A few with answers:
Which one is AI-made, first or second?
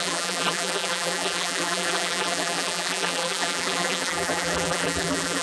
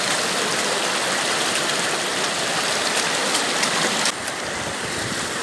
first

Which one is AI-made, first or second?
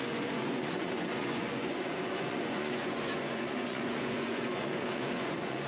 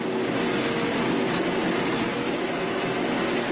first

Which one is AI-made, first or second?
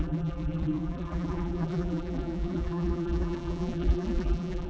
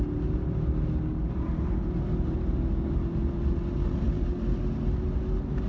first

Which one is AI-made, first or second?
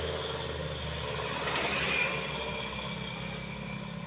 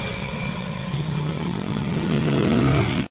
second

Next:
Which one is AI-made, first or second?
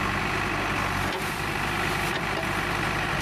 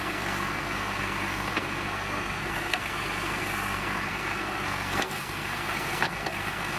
second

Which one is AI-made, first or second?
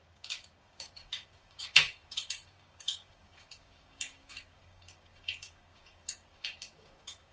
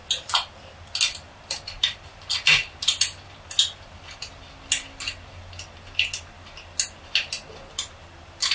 first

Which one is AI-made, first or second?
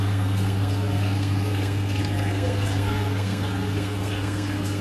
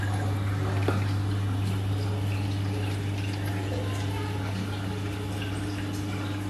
first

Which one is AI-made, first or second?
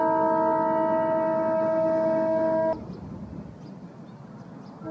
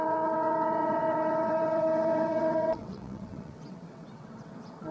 second